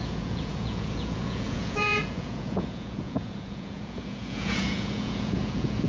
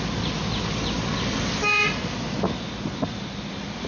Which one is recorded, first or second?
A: second